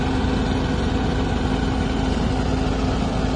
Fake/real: real